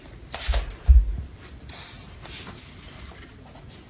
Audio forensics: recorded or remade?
recorded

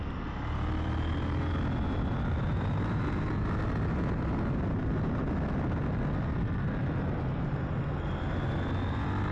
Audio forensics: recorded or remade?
recorded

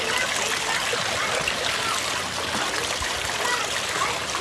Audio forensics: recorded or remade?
recorded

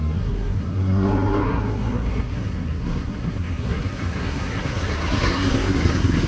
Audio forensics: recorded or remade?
remade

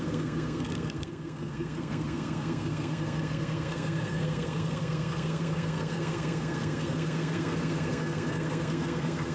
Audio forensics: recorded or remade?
remade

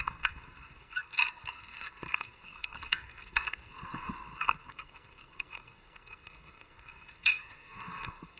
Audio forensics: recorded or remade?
remade